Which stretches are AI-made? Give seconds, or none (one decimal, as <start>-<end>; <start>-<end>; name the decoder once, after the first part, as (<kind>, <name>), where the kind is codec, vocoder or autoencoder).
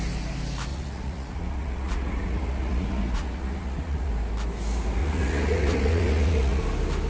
0.7-4.1 (vocoder, Vocos); 5.0-6.6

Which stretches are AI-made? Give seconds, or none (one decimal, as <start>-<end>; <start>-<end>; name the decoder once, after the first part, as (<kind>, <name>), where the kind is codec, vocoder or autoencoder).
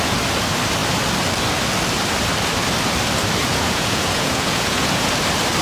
3.4-5.1 (vocoder, Vocos)